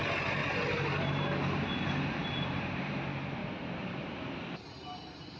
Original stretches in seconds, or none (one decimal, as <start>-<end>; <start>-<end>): 0.0-2.2; 2.9-3.4; 4.4-5.4